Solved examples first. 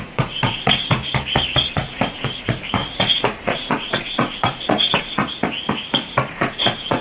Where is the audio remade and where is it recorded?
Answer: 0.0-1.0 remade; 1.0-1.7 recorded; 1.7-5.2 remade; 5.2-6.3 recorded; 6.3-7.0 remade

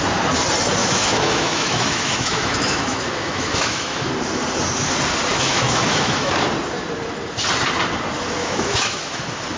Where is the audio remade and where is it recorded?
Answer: 0.0-0.8 recorded; 0.8-4.1 remade; 4.1-5.3 recorded; 5.3-6.3 remade; 6.3-8.4 recorded; 8.4-9.2 remade; 9.2-9.6 recorded

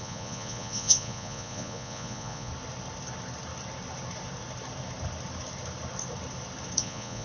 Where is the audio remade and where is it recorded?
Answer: 0.0-2.5 remade; 2.5-6.8 recorded; 6.8-7.2 remade

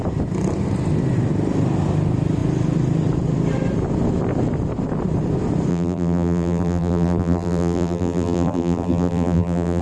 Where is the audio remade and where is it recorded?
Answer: 0.0-5.7 recorded; 5.7-9.8 remade

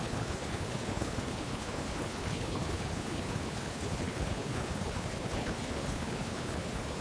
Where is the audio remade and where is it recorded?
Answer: 0.0-7.0 remade

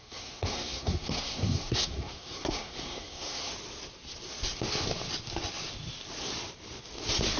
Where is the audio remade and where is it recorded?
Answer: 0.0-3.5 remade; 3.5-7.4 recorded